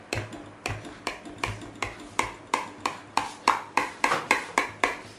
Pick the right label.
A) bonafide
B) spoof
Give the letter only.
A